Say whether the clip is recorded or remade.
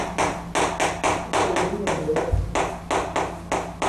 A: recorded